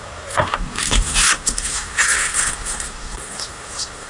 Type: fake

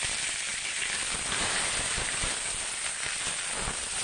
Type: real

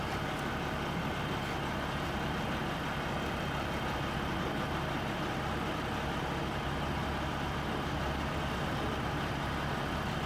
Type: real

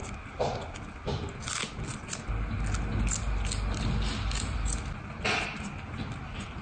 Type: real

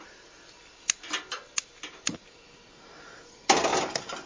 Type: real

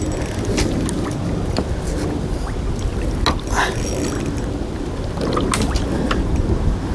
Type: real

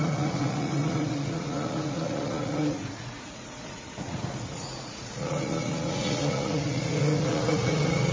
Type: fake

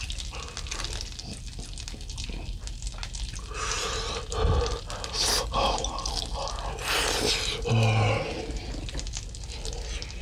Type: real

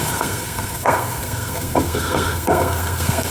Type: fake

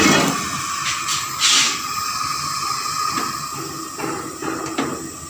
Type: real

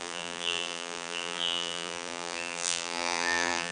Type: fake